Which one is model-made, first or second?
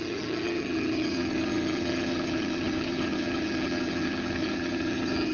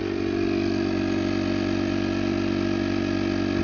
first